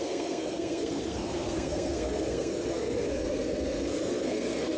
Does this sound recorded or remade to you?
remade